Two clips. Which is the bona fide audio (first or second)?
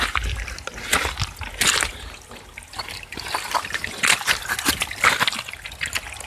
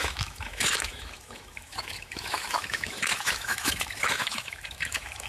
first